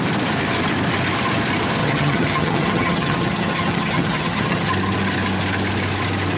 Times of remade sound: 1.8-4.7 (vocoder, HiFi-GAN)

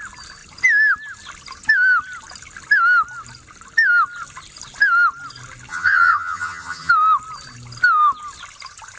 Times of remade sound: 5.7-6.9 (vocoder, HiFi-GAN)

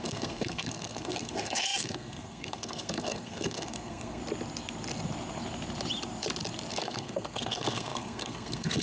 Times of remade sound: 0.0-4.2 (codec, SNAC); 6.7-8.8

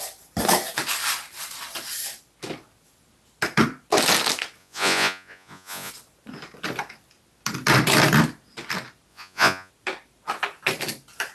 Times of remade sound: 4.6-5.9 (vocoder, Vocos); 9.1-9.7

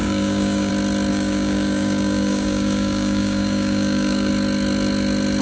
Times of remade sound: 0.0-0.7 (codec, DAC); 1.1-4.3